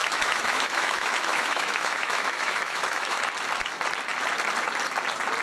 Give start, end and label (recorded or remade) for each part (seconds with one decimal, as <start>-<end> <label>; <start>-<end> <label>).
0.0-3.2 remade; 3.2-5.4 recorded